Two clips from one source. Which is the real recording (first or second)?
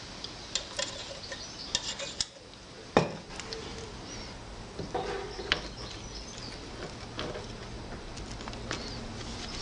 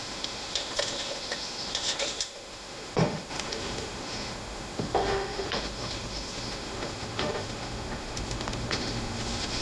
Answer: first